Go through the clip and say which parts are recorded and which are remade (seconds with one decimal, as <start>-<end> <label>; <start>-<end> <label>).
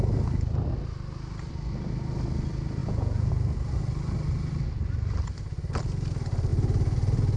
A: 0.0-2.8 recorded; 2.8-3.3 remade; 3.3-7.4 recorded